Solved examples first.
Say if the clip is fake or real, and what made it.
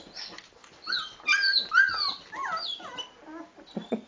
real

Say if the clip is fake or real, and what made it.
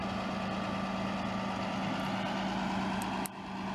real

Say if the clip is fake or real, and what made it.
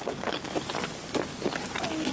real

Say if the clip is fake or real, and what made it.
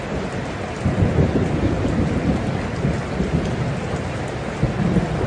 real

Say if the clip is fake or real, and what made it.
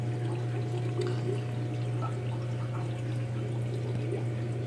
real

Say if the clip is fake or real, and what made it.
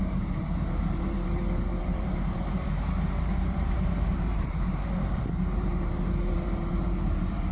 fake, vocoder, BigVGAN v2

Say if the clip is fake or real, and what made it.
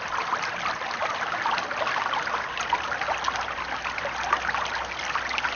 real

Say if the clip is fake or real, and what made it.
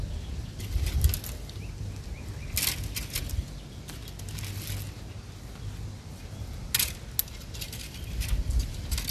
real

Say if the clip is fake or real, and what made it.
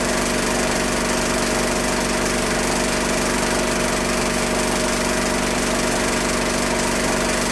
real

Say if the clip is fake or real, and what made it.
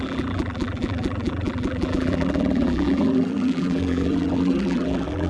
fake, vocoder, BigVGAN v2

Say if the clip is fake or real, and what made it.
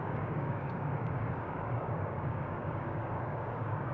fake, codec, DAC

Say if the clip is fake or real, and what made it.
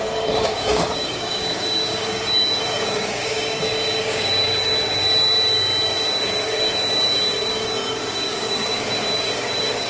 fake, codec, DAC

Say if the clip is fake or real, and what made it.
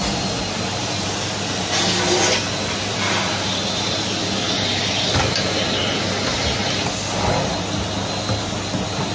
real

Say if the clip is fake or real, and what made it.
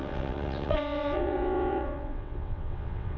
fake, vocoder, WaveNeXt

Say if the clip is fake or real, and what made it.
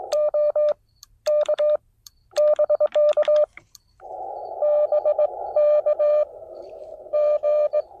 fake, vocoder, BigVGAN v2